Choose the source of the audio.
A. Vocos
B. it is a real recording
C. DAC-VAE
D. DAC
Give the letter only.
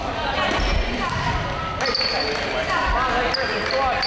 B